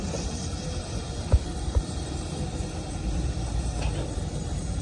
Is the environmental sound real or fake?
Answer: fake